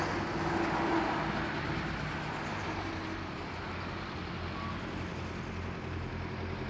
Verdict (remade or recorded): recorded